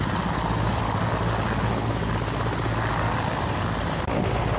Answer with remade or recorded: recorded